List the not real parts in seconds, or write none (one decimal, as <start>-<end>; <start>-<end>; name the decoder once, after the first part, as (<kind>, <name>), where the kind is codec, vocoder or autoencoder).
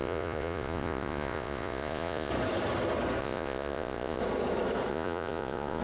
0.0-2.3 (vocoder, Vocos); 3.2-4.2; 4.9-5.8